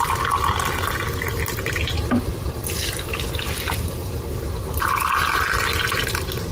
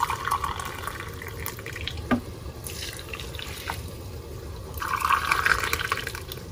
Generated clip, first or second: second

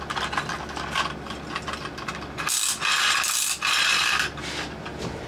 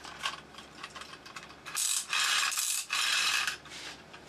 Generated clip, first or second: second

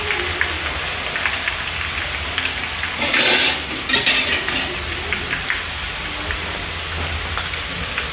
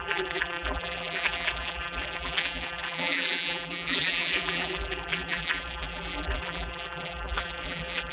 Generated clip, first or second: second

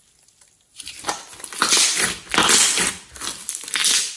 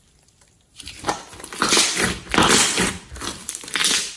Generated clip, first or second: second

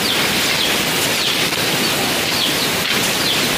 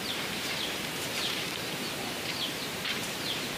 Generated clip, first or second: second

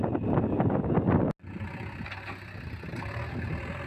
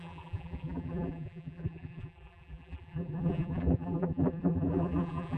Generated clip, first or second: second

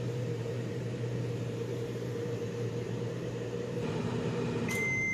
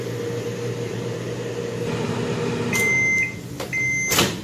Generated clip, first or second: first